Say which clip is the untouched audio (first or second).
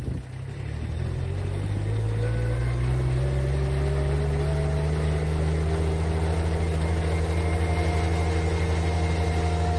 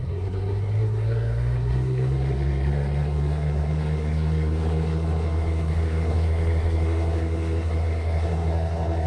first